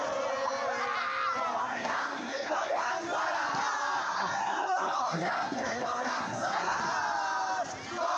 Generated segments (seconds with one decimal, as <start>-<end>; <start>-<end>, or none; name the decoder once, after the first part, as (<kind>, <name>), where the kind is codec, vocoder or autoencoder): 1.6-2.9 (codec, SNAC); 4.0-6.8